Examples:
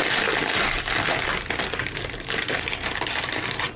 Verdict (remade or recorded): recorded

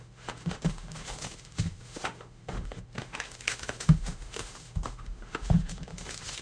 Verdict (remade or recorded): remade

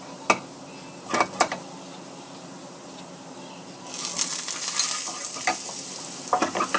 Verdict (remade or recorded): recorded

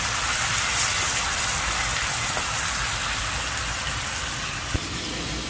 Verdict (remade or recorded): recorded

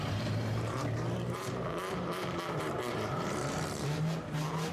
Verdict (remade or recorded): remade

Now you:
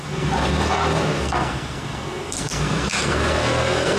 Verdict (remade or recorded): remade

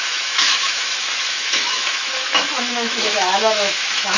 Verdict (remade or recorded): remade